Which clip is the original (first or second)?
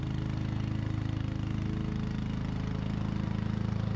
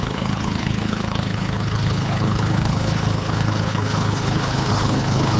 first